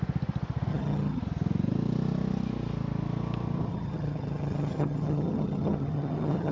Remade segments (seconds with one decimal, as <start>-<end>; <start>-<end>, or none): 0.7-1.2; 3.7-6.5

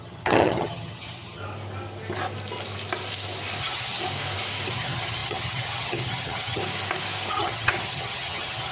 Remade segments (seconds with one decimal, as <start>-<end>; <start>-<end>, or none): 0.0-1.4; 3.6-4.0; 4.7-6.6; 7.3-8.7

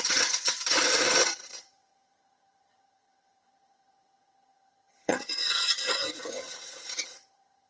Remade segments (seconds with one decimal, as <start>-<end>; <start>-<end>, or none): 0.0-7.7